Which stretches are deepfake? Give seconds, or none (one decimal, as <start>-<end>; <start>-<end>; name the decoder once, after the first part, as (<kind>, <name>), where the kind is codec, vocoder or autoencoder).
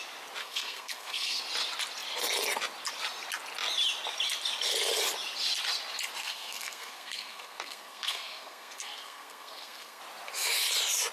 0.4-1.4 (codec, SNAC); 6.2-10.0